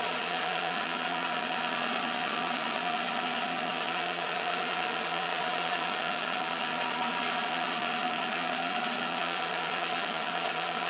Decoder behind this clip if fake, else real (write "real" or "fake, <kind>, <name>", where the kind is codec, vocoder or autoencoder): fake, vocoder, Vocos